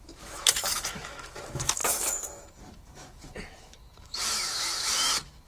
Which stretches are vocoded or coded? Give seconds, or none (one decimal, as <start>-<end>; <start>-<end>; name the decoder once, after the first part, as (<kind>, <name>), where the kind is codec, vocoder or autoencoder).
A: 0.0-5.5 (autoencoder, DAC-VAE)